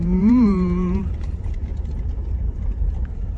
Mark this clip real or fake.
fake